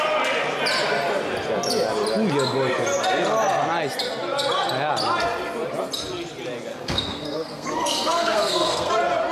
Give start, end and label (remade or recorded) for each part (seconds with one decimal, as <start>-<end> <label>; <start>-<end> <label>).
0.0-6.7 recorded; 6.7-8.9 remade; 8.9-9.3 recorded